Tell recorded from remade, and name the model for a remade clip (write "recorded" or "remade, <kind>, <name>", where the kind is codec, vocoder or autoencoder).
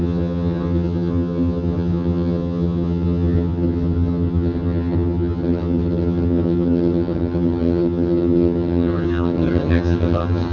remade, vocoder, HiFi-GAN